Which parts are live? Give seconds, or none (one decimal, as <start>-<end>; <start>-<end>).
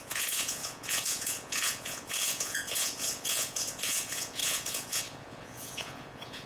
none